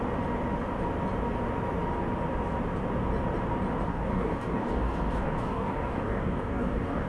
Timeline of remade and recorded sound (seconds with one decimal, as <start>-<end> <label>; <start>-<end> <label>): 0.0-3.9 recorded; 3.9-7.1 remade